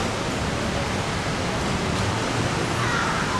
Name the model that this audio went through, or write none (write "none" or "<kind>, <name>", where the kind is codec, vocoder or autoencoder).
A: none